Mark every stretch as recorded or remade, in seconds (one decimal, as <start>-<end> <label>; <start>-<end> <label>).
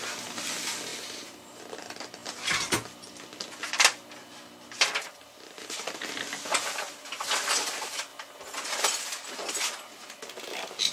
0.0-0.9 recorded; 0.9-1.6 remade; 1.6-10.9 recorded